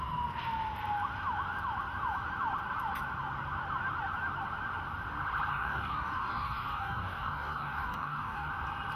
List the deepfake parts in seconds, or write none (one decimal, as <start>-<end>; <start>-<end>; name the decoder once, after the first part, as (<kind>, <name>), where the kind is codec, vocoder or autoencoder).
5.5-8.5 (codec, DAC)